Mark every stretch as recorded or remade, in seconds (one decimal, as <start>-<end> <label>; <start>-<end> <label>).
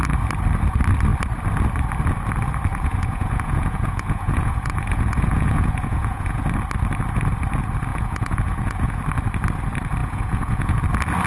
0.0-2.7 recorded; 2.7-6.4 remade; 6.4-7.9 recorded; 7.9-9.0 remade; 9.0-10.0 recorded; 10.0-10.8 remade; 10.8-11.3 recorded